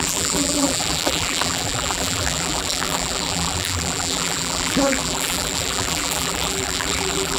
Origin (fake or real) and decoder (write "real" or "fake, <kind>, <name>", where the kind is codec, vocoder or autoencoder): fake, vocoder, BigVGAN v2